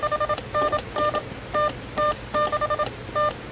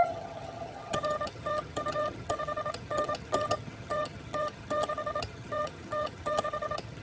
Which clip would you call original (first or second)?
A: first